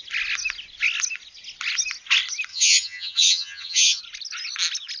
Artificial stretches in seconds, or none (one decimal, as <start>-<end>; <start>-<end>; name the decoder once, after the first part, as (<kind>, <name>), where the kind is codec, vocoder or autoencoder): 2.5-4.0 (vocoder, HiFi-GAN)